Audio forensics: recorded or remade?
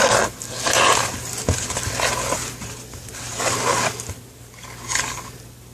recorded